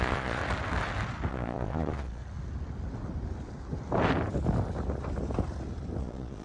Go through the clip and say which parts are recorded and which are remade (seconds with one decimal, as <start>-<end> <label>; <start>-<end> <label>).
0.0-0.4 remade; 0.4-1.3 recorded; 1.3-2.2 remade; 2.2-6.0 recorded; 6.0-6.4 remade